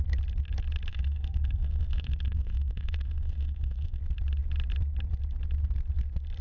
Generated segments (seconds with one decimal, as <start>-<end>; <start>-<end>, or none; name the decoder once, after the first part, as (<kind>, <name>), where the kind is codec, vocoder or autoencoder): 0.9-4.0 (codec, SNAC)